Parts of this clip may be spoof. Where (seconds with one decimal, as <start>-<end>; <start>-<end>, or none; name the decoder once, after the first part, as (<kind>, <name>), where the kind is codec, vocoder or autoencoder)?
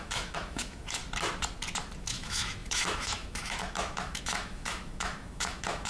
0.0-1.0 (autoencoder, DAC-VAE); 2.0-5.9